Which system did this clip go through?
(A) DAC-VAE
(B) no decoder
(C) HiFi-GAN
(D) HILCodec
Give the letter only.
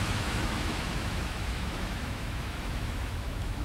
A